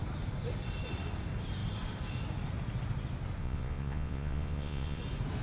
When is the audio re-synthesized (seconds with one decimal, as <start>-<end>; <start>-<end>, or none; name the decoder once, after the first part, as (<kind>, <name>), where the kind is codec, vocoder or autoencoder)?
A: 3.4-5.0 (vocoder, Vocos)